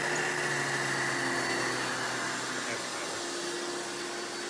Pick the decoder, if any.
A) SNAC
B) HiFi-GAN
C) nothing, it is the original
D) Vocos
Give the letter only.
C